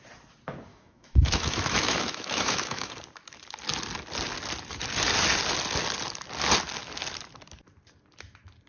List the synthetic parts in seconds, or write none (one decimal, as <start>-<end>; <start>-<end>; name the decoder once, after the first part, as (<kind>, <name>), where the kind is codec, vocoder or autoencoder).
0.7-2.9 (autoencoder, DAC-VAE)